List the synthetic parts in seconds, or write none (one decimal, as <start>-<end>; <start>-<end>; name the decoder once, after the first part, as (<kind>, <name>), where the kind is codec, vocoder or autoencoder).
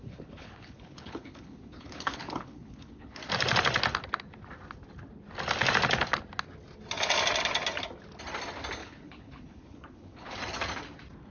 0.0-3.2 (codec, HILCodec); 8.8-10.4